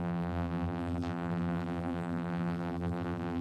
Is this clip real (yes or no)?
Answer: no